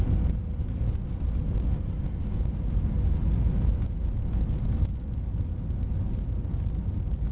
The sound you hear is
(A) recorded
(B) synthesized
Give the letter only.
A